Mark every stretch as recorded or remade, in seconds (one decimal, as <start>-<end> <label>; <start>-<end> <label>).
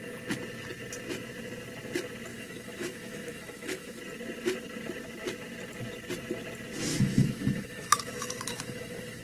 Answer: 0.0-2.3 recorded; 2.3-4.0 remade; 4.0-6.9 recorded; 6.9-9.2 remade